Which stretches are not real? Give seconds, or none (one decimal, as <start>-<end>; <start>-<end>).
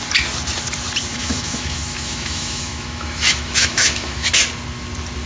1.1-4.3